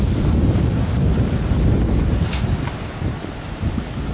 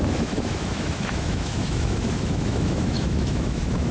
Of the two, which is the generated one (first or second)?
second